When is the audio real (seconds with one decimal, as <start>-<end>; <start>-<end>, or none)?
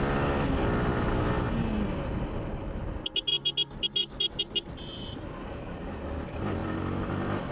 0.0-7.5